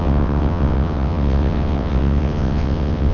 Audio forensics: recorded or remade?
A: remade